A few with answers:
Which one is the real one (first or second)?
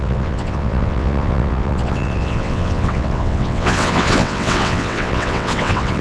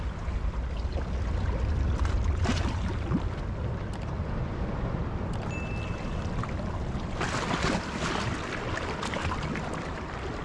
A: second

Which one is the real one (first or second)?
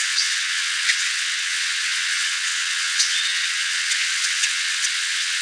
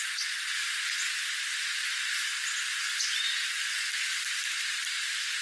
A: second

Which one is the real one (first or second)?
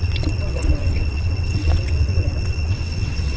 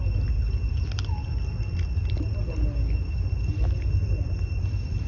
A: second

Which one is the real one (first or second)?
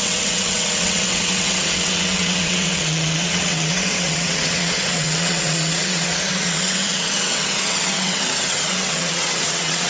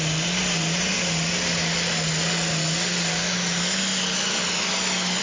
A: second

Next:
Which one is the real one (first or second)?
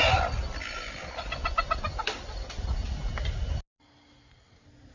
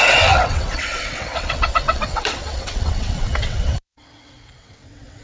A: first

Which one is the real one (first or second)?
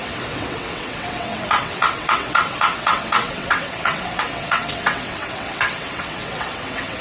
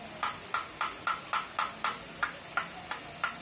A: second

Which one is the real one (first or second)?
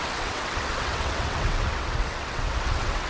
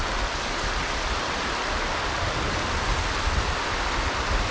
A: second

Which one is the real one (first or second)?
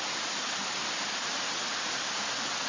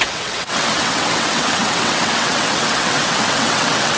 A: first